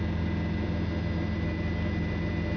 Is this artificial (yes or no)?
no